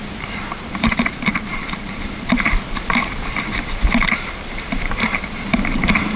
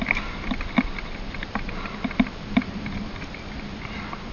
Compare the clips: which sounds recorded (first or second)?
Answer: second